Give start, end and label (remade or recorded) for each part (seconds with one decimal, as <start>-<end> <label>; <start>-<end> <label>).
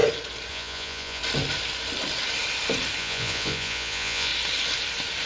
0.0-0.5 recorded; 0.5-1.2 remade; 1.2-3.0 recorded; 3.0-4.3 remade; 4.3-5.3 recorded